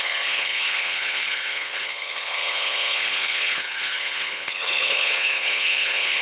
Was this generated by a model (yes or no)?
yes